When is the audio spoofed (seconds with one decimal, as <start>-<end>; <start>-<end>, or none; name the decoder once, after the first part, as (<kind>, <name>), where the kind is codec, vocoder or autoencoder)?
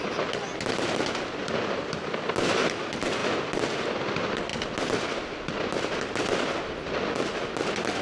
none